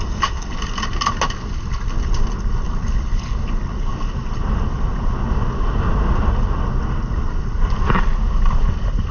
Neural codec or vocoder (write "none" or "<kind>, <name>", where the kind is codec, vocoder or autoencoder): none